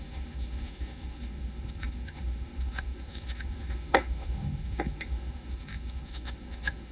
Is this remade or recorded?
remade